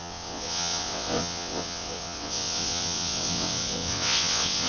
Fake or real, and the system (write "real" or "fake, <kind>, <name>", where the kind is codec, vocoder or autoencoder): fake, vocoder, WaveNeXt